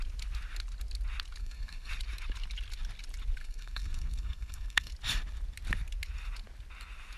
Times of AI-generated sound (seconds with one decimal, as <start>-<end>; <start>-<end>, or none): 1.4-1.9; 3.4-4.9